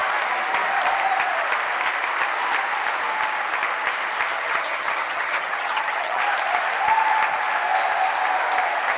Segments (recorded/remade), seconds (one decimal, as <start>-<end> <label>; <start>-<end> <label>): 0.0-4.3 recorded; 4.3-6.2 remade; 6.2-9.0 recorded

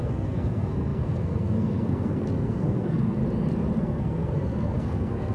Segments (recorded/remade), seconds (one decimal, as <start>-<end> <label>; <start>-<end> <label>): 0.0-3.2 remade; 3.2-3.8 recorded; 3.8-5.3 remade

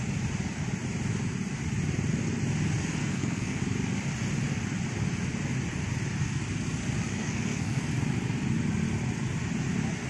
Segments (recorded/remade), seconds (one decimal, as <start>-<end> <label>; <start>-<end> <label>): 0.0-3.0 recorded; 3.0-3.6 remade; 3.6-7.1 recorded; 7.1-7.8 remade; 7.8-10.1 recorded

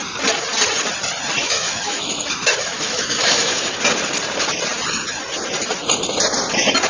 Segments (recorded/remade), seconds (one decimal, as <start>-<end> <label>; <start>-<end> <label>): 0.0-1.4 recorded; 1.4-3.7 remade; 3.7-6.9 recorded

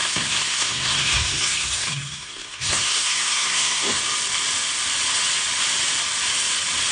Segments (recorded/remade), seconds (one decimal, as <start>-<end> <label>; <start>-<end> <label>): 0.0-4.0 remade; 4.0-6.9 recorded